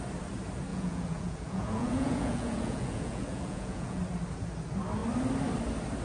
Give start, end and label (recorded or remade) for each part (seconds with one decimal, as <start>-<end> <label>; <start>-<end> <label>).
0.0-0.7 recorded; 0.7-4.0 remade; 4.0-6.0 recorded